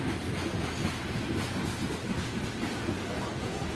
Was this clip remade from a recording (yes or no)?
no